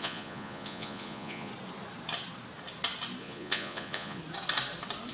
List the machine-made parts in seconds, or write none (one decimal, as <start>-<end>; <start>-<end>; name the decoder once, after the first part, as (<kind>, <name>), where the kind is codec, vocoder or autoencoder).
0.0-1.5 (vocoder, Vocos); 3.2-4.2